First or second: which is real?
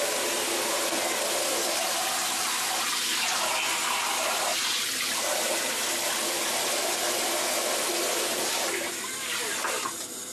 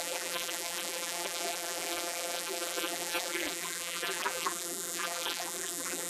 first